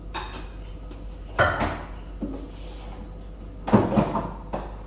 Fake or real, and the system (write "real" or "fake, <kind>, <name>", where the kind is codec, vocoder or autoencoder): real